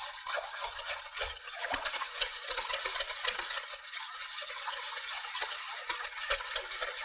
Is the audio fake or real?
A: fake